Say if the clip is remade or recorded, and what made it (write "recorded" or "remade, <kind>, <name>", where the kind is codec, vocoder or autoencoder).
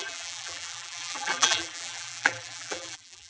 remade, vocoder, BigVGAN v2